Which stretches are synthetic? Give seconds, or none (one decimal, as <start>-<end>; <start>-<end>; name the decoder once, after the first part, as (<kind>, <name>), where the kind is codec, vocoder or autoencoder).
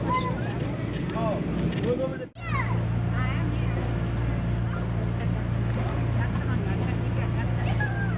none